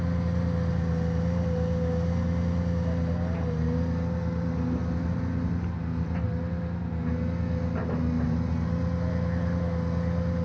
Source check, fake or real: real